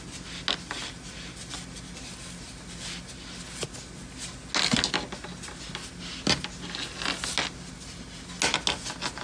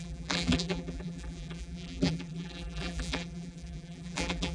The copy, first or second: second